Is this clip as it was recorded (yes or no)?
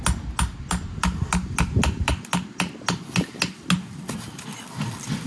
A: yes